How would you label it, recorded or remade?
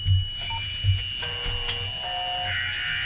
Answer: recorded